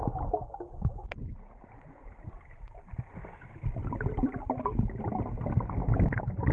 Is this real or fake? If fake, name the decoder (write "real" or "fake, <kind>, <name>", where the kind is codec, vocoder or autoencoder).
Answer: real